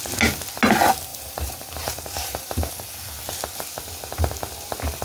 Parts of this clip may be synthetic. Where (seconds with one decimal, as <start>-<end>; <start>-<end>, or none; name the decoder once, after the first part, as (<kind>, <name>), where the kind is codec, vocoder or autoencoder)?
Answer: 1.1-2.7 (vocoder, BigVGAN v2)